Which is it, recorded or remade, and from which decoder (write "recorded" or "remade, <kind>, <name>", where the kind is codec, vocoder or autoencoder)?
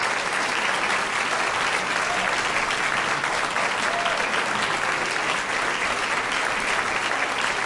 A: recorded